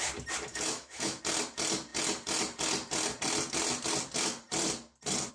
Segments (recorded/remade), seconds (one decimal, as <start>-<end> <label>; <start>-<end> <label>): 0.0-0.5 recorded; 0.5-1.2 remade; 1.2-5.3 recorded